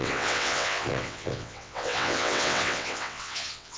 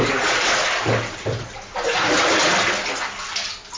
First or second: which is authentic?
second